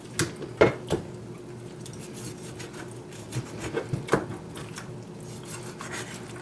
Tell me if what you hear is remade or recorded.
recorded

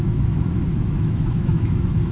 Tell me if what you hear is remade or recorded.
remade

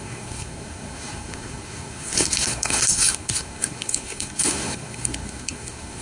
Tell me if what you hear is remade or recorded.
remade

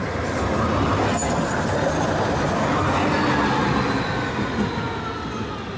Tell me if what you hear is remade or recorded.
recorded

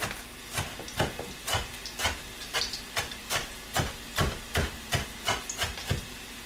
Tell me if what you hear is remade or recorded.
recorded